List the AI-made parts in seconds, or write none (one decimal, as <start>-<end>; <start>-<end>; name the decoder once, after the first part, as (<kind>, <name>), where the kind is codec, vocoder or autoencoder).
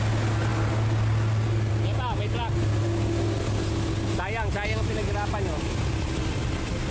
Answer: none